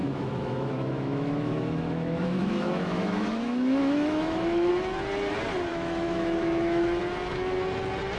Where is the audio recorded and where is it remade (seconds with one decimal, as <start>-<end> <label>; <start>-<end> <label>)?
0.0-4.7 remade; 4.7-5.7 recorded; 5.7-7.0 remade; 7.0-8.2 recorded